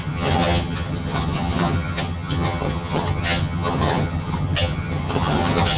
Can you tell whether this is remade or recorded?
remade